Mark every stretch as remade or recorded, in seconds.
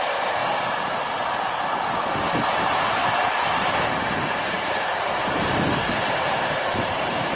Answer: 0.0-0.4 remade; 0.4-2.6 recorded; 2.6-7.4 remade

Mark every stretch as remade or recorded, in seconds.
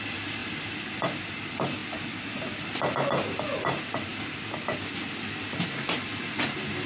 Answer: 0.0-6.9 recorded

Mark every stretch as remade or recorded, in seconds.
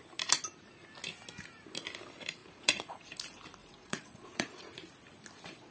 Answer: 0.0-2.4 recorded; 2.4-3.0 remade; 3.0-3.6 recorded; 3.6-4.7 remade; 4.7-5.7 recorded